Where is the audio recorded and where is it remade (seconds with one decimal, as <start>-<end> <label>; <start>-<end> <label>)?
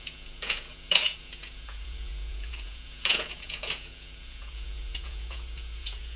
0.0-6.2 remade